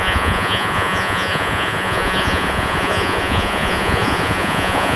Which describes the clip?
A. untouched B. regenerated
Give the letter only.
B